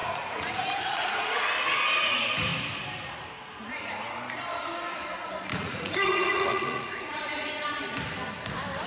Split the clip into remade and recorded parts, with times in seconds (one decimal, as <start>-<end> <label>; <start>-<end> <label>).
0.0-1.4 remade; 1.4-5.5 recorded; 5.5-7.9 remade; 7.9-8.9 recorded